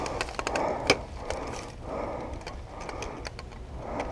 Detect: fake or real real